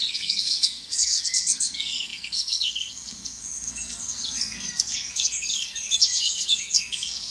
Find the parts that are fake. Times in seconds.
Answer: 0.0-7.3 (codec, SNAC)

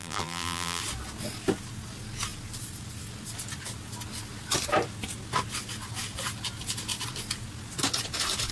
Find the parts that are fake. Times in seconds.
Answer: 0.0-0.8 (vocoder, BigVGAN v2)

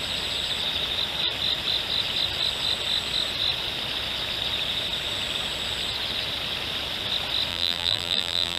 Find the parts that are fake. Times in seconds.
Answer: 7.5-8.6 (vocoder, BigVGAN v2)

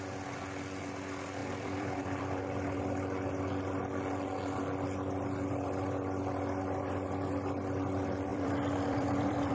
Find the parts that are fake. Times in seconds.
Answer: 1.4-2.4 (vocoder, BigVGAN v2); 8.3-9.5

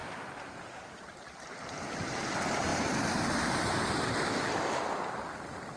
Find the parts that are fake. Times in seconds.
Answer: 0.0-1.8 (vocoder, BigVGAN v2); 2.7-3.9

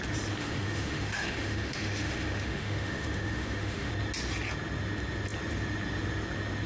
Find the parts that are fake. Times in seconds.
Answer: 0.4-3.9 (autoencoder, DAC-VAE)